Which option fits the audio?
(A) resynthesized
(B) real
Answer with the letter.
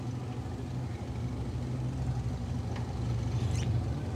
B